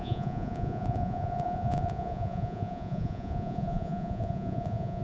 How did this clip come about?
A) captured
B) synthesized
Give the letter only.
B